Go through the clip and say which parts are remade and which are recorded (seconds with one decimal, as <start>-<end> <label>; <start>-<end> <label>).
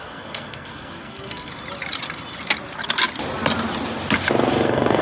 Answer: 0.0-1.5 remade; 1.5-4.5 recorded; 4.5-5.0 remade